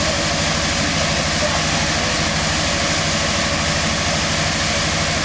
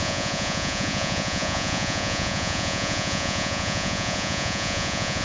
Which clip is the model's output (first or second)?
second